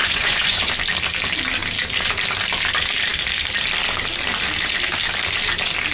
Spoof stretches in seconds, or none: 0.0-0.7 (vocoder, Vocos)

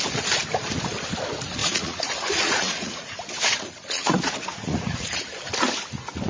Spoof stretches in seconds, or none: 1.6-5.2 (vocoder, Vocos)

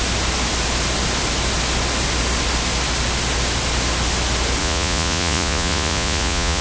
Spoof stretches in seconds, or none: 4.6-6.6 (vocoder, Vocos)

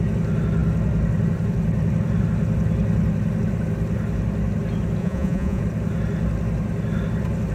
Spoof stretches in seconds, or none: 5.0-5.6 (vocoder, Vocos)

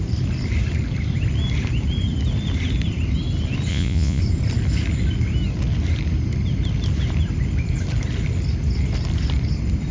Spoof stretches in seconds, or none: 3.7-4.2 (vocoder, Vocos)